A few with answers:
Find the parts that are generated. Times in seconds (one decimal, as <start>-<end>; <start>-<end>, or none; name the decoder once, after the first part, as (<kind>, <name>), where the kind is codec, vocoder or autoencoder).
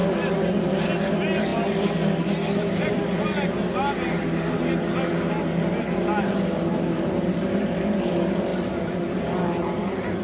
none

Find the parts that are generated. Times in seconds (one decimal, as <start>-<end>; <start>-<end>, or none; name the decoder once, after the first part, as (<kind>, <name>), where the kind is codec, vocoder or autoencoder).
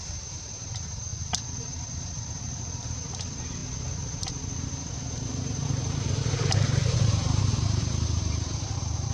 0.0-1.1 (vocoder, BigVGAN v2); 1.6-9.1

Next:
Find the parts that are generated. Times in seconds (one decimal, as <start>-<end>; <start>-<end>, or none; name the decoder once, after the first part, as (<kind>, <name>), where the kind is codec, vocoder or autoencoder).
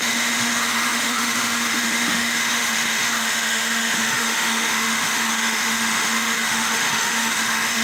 0.0-7.8 (autoencoder, DAC-VAE)